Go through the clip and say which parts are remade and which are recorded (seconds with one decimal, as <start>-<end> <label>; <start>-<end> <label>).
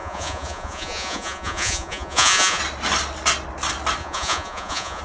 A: 0.0-2.6 remade; 2.6-4.0 recorded; 4.0-5.0 remade